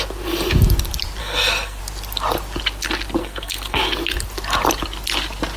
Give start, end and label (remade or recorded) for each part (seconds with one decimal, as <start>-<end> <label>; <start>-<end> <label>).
0.0-1.2 recorded; 1.2-1.8 remade; 1.8-3.2 recorded; 3.2-3.8 remade; 3.8-5.6 recorded